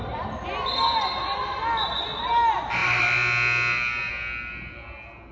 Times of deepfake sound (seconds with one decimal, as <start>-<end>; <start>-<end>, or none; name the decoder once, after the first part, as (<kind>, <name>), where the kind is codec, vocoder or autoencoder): none